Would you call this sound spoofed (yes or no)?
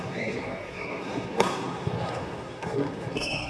yes